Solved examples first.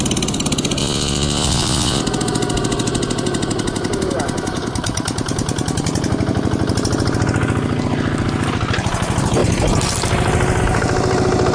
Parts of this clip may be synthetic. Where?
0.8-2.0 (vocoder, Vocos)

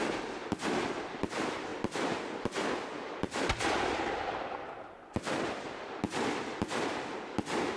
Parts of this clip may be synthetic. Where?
none

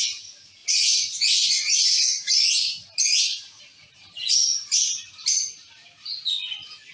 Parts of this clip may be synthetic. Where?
0.6-1.7 (vocoder, Vocos)